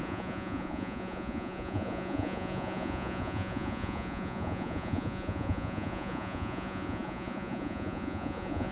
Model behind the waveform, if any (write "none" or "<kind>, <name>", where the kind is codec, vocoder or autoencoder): vocoder, Vocos